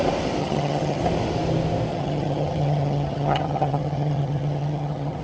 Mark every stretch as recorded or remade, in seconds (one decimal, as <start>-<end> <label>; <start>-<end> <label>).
0.0-0.4 recorded; 0.4-1.0 remade; 1.0-1.9 recorded; 1.9-5.2 remade